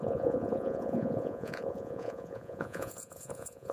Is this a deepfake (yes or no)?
yes